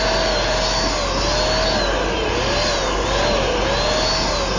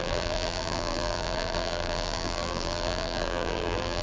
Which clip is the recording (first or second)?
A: first